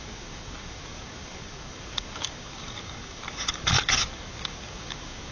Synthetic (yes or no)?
yes